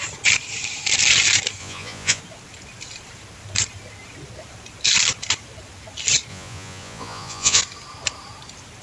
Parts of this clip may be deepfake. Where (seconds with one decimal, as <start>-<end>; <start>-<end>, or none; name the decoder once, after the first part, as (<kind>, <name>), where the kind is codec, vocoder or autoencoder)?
1.6-2.2 (vocoder, Vocos); 6.3-7.6